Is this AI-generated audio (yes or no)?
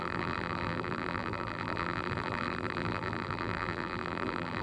yes